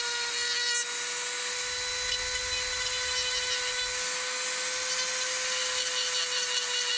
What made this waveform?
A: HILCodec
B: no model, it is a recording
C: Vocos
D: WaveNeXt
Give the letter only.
B